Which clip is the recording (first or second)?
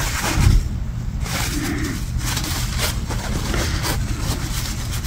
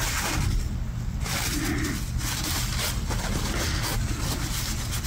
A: second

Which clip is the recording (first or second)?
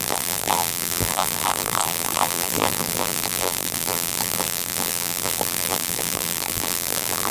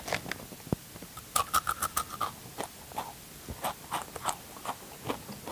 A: second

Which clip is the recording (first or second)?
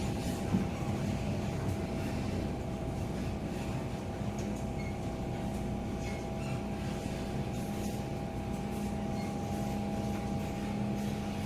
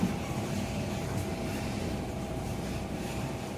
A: first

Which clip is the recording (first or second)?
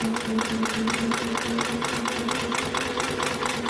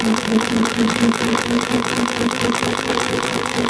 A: first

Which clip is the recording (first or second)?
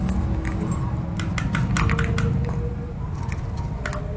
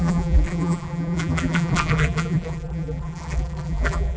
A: first